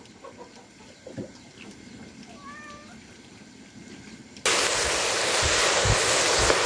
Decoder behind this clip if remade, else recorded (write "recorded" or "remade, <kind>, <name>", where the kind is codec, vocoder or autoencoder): recorded